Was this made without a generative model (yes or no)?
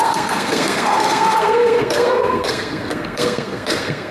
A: no